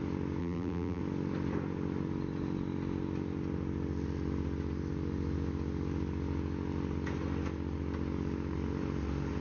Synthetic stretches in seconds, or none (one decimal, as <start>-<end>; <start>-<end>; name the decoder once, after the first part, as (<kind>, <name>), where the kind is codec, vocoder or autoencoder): 0.4-1.0 (vocoder, BigVGAN v2)